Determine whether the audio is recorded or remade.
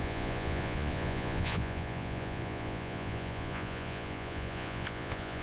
remade